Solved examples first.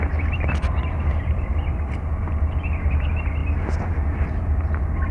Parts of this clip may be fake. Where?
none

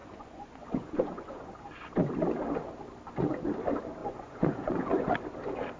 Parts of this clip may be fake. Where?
0.0-1.6 (vocoder, Vocos); 4.0-5.1

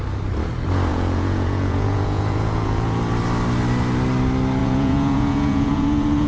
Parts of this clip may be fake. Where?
0.9-3.0 (vocoder, Vocos); 4.6-6.3

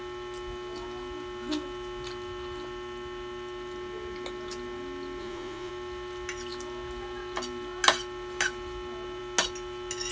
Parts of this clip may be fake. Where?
5.2-5.7 (vocoder, Vocos)

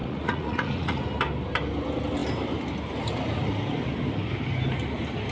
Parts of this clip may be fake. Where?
0.0-1.0 (vocoder, Vocos)

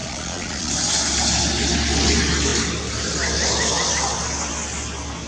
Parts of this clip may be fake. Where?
0.0-0.7 (vocoder, Vocos)